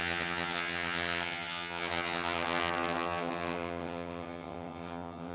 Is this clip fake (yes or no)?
yes